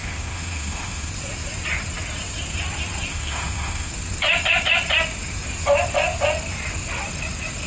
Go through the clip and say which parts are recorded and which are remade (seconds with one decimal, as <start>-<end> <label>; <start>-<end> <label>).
0.0-1.1 remade; 1.1-3.1 recorded; 3.1-3.9 remade; 3.9-7.7 recorded

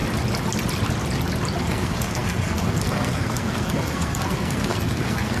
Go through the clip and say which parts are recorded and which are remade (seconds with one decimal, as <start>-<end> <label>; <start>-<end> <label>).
0.0-1.6 recorded; 1.6-5.4 remade

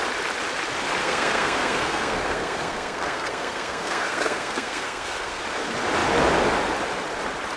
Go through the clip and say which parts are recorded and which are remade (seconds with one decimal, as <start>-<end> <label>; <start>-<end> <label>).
0.0-1.0 recorded; 1.0-5.4 remade; 5.4-7.6 recorded